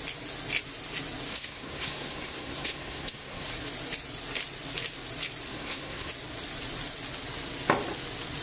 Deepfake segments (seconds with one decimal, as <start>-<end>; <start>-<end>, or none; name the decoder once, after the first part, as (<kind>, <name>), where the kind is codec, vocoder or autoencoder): 1.3-3.5 (codec, SNAC); 5.5-6.1